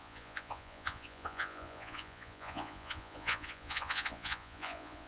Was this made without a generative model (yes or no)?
no